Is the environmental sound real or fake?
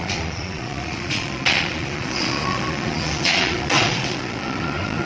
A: fake